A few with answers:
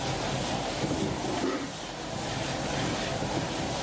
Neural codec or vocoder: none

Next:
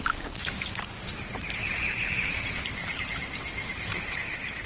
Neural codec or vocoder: vocoder, BigVGAN v2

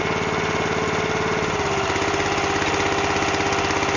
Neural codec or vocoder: none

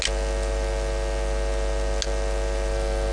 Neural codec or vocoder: none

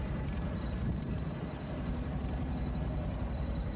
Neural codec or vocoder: vocoder, BigVGAN v2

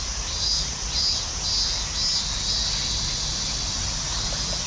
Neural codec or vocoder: none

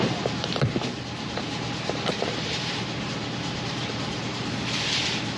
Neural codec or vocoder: vocoder, BigVGAN v2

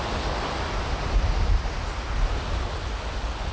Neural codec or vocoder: none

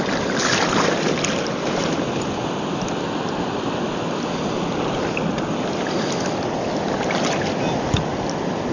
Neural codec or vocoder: none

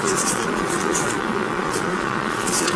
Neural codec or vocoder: vocoder, Vocos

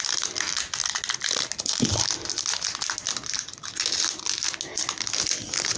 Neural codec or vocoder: none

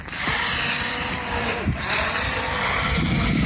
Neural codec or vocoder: none